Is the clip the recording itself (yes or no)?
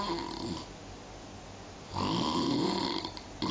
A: yes